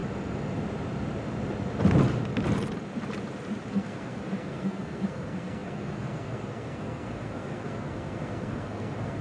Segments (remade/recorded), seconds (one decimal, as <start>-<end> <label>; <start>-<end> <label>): 0.0-3.7 recorded; 3.7-9.2 remade